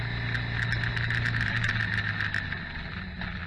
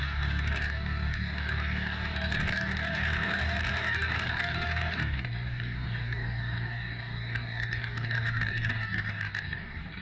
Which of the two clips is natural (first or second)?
first